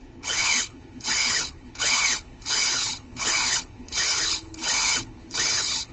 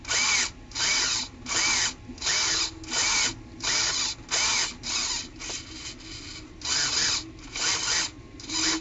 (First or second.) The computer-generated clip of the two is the first